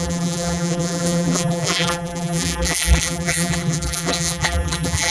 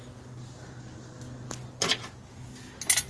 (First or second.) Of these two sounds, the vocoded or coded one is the first